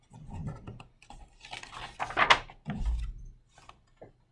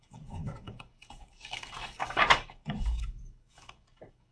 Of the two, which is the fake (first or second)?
second